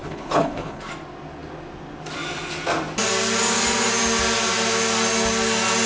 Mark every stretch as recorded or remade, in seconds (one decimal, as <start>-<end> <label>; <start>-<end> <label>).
0.0-0.9 remade; 0.9-5.9 recorded